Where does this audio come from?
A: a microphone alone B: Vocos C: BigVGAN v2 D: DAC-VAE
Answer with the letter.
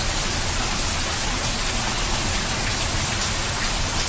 A